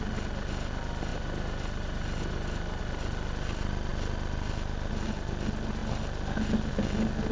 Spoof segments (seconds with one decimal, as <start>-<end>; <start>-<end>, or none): 1.1-2.8